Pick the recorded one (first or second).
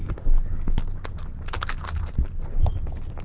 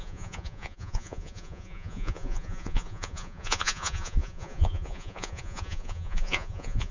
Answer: first